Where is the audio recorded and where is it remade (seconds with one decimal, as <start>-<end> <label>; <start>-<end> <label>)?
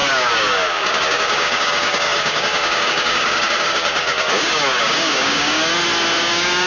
0.0-5.7 remade; 5.7-6.2 recorded; 6.2-6.7 remade